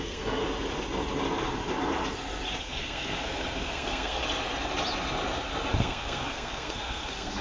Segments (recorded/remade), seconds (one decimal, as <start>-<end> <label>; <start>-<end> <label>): 0.0-0.4 remade; 0.4-2.6 recorded; 2.6-4.2 remade; 4.2-5.8 recorded; 5.8-7.4 remade